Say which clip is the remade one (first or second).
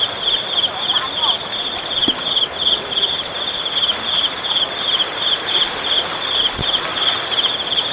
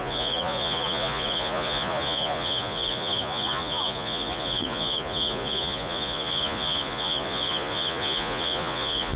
second